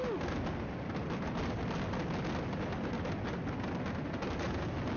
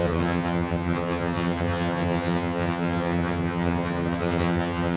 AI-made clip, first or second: second